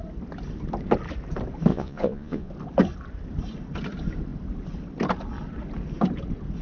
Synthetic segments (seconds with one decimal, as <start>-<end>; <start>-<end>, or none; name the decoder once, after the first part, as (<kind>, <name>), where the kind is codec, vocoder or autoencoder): 1.7-2.5 (vocoder, Vocos)